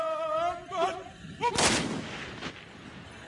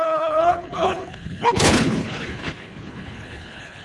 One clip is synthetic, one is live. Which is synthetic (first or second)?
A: second